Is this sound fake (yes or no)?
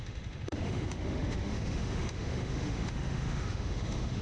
yes